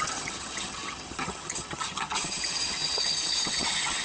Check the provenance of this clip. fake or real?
fake